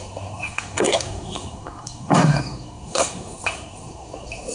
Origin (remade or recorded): remade